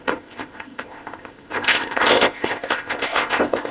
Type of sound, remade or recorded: remade